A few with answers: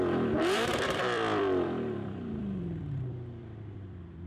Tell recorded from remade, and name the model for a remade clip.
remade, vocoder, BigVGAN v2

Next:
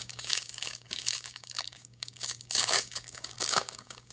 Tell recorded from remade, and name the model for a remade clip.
remade, codec, DAC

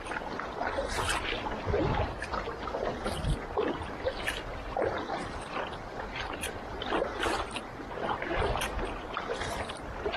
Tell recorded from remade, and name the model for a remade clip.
remade, vocoder, BigVGAN v2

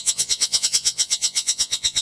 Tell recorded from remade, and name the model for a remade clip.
remade, vocoder, Vocos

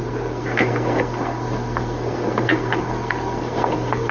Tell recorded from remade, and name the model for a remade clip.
remade, codec, SNAC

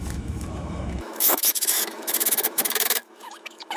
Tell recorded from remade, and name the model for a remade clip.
remade, autoencoder, DAC-VAE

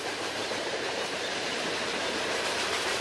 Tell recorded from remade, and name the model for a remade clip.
remade, vocoder, BigVGAN v2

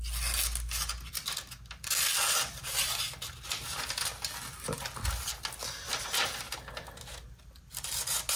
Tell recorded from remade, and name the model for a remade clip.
recorded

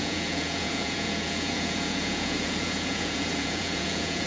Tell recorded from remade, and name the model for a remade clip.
remade, vocoder, Vocos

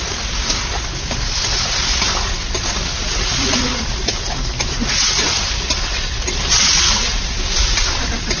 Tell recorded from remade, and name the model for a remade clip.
recorded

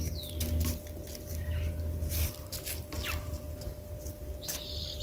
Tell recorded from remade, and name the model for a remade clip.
recorded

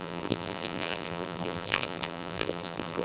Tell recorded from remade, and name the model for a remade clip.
remade, vocoder, BigVGAN v2